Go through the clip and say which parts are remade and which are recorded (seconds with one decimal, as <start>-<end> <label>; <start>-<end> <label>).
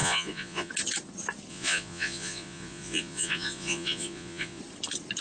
0.0-0.7 remade; 0.7-1.5 recorded; 1.5-4.6 remade; 4.6-5.2 recorded